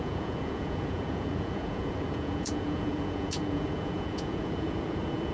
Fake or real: fake